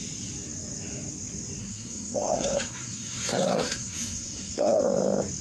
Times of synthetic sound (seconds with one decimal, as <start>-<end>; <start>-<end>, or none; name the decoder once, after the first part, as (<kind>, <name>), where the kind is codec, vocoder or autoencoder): 1.6-4.8 (codec, SNAC)